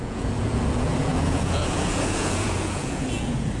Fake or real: fake